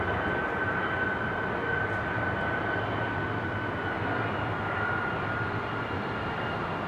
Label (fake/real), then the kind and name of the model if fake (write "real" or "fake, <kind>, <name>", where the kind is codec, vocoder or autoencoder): real